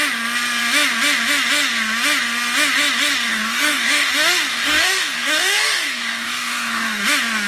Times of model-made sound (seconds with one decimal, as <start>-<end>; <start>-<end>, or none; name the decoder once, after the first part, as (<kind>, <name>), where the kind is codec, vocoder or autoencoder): 3.3-4.1 (codec, DAC); 4.5-7.0